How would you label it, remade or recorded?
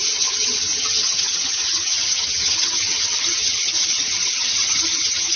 remade